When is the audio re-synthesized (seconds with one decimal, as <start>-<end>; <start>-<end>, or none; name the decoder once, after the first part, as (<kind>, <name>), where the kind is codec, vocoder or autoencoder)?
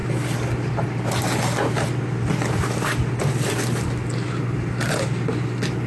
none